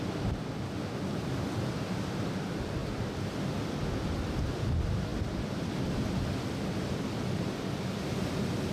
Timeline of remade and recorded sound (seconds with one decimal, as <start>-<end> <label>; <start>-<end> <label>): 0.0-8.7 recorded